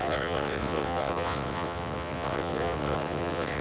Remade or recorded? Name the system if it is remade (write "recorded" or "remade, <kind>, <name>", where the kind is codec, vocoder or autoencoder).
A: remade, vocoder, WaveNeXt